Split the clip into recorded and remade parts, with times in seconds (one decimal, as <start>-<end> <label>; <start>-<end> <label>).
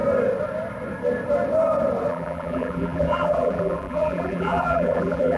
0.0-2.1 recorded; 2.1-5.4 remade